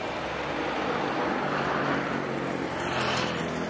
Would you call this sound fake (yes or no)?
no